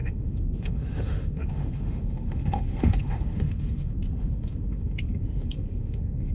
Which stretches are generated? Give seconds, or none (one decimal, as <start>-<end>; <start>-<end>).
0.0-6.3